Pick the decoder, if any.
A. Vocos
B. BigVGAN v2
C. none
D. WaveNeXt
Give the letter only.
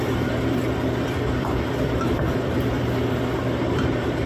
B